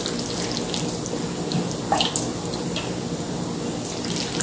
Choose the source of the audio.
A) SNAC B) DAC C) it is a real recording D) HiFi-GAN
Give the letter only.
C